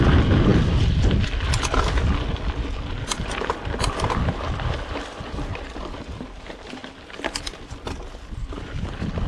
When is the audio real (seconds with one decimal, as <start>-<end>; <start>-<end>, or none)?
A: 0.0-9.3